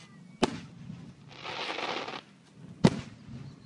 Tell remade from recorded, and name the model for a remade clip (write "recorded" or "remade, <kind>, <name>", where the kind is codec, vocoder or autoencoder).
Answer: recorded